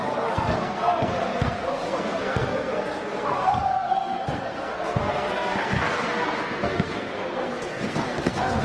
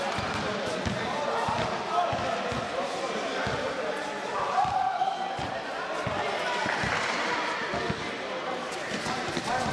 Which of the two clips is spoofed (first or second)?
first